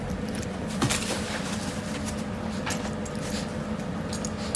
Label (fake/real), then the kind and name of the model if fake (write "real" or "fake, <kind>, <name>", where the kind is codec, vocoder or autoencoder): real